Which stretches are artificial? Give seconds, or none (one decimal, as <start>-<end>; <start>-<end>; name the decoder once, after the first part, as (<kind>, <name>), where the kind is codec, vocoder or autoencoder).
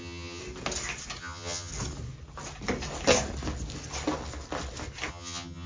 0.0-0.4 (vocoder, HiFi-GAN); 1.2-1.7; 5.1-5.7